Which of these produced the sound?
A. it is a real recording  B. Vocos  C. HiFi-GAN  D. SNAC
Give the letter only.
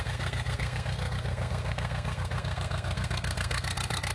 D